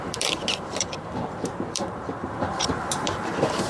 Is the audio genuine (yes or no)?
no